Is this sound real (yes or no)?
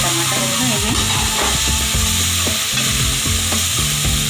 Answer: yes